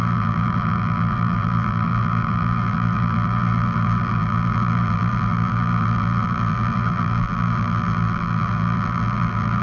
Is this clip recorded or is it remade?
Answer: remade